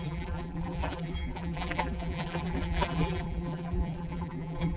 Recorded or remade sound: remade